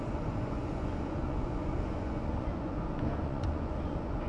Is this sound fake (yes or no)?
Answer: yes